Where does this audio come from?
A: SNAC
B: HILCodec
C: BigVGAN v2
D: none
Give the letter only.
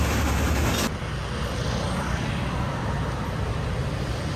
D